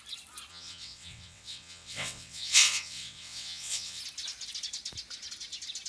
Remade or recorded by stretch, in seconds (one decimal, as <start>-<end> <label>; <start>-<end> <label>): 0.0-0.5 recorded; 0.5-4.0 remade; 4.0-5.9 recorded